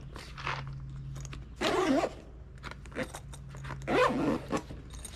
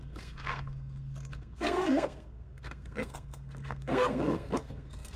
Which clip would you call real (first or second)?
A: first